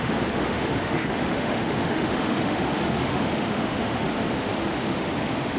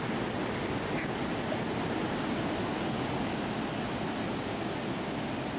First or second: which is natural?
second